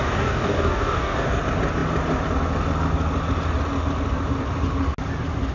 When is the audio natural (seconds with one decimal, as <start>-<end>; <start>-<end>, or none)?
1.4-5.5